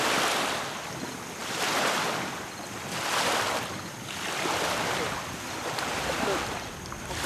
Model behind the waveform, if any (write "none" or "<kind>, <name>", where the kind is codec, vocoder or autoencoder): none